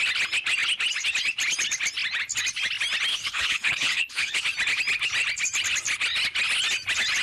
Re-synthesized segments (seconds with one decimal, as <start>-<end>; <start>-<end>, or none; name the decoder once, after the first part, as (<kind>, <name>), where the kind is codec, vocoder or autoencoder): 3.1-4.4 (codec, HILCodec)